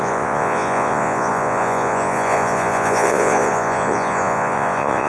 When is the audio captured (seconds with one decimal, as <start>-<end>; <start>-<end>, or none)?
none